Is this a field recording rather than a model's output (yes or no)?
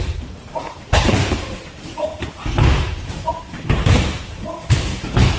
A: no